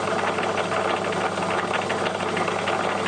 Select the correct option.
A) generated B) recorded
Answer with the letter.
B